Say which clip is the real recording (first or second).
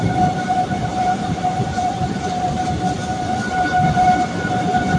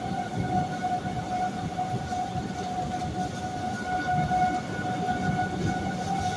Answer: second